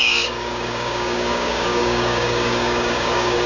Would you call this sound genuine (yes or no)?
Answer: no